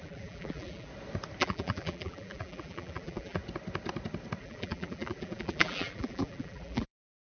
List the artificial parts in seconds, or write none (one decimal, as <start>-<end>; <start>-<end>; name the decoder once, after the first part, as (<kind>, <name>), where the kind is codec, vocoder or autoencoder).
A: 0.0-0.9 (vocoder, BigVGAN v2); 1.4-3.4; 4.4-7.4